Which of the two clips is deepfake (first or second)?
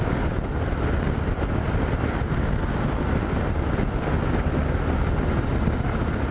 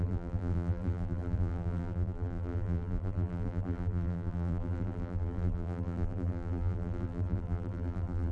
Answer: second